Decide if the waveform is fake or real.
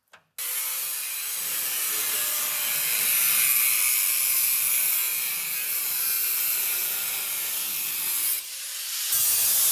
real